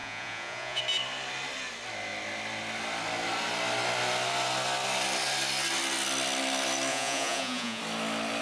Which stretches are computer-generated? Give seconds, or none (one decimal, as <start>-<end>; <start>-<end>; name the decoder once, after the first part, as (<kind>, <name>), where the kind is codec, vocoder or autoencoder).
0.0-0.8 (vocoder, Vocos); 6.9-7.8

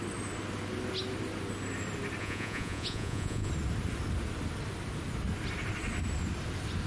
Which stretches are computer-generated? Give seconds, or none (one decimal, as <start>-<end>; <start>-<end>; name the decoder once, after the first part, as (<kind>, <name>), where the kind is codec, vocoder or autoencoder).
2.2-3.5 (vocoder, Vocos)

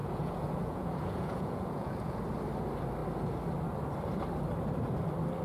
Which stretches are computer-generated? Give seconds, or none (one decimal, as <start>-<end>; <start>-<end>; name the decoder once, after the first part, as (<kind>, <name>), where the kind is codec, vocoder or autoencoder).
0.0-2.2 (vocoder, Vocos)

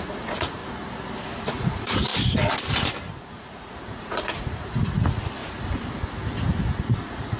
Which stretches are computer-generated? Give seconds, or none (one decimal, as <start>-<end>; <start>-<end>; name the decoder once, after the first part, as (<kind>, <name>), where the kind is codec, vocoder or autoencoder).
0.0-0.6 (vocoder, Vocos); 1.4-2.1; 3.2-5.4; 6.7-7.4

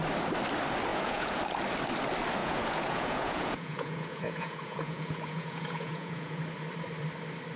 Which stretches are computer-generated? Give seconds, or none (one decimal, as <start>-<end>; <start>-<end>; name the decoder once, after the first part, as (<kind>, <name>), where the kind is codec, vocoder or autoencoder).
0.9-1.4 (vocoder, Vocos); 2.4-6.4

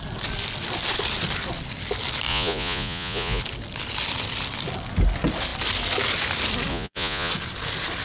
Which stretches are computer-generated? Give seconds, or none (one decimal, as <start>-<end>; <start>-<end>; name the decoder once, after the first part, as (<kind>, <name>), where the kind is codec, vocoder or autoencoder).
2.3-3.4 (vocoder, Vocos); 6.7-7.3

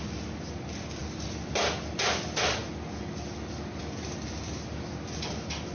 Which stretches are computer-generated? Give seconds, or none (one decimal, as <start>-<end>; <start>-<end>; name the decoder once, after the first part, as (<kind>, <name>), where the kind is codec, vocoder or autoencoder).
none